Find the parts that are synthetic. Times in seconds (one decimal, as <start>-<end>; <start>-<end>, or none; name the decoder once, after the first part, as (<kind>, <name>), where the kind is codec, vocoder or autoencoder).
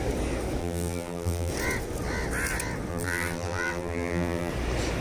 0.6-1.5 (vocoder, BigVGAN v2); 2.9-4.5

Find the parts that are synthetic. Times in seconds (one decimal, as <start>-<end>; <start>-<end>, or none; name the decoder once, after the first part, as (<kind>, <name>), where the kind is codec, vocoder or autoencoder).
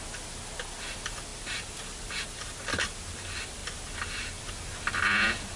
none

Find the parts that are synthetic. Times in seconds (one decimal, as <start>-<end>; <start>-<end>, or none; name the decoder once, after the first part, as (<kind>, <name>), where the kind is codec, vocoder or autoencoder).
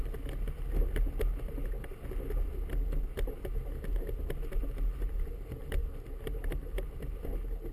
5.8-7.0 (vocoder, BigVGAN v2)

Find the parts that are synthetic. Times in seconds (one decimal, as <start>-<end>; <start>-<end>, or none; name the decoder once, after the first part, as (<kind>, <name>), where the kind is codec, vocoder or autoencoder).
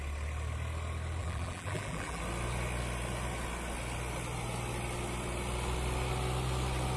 1.2-2.2 (vocoder, BigVGAN v2)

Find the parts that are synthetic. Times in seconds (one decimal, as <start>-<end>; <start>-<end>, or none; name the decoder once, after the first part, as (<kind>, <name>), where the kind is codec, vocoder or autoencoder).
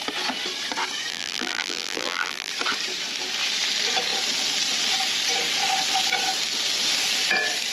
1.1-2.5 (vocoder, BigVGAN v2)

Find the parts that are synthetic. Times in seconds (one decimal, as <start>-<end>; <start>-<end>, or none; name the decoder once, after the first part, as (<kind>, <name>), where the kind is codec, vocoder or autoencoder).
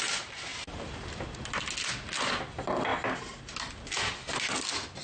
none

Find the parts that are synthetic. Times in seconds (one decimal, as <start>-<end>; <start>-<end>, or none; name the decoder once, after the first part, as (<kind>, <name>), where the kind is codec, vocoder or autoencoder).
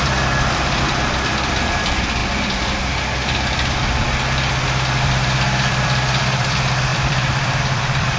0.0-2.2 (vocoder, BigVGAN v2); 5.0-8.2